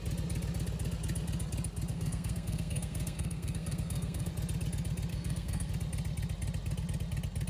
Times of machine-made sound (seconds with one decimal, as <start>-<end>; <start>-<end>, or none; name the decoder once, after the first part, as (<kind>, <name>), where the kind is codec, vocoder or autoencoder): 1.9-4.3 (codec, SNAC); 5.1-5.7